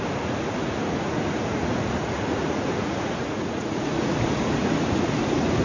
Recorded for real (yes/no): no